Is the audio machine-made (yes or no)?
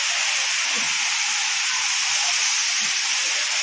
no